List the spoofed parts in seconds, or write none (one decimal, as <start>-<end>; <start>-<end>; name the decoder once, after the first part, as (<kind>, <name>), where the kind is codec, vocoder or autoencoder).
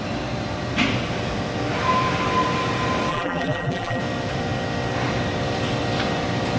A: 3.1-4.0 (vocoder, BigVGAN v2)